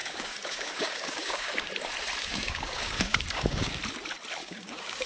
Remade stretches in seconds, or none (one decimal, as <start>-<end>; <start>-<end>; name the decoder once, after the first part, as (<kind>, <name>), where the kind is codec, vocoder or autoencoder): 0.0-1.7 (codec, DAC); 2.2-3.8; 4.4-5.1